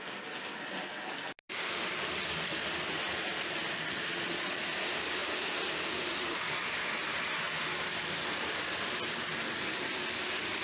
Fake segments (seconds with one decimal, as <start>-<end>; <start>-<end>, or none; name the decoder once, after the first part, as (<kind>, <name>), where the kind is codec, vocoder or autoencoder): 4.1-4.6 (vocoder, Vocos)